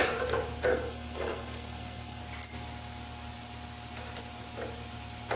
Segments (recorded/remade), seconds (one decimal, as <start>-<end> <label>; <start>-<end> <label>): 0.0-0.7 recorded; 0.7-2.2 remade; 2.2-5.4 recorded